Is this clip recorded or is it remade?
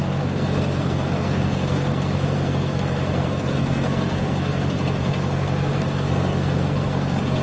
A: remade